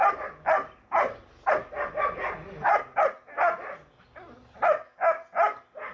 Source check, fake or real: real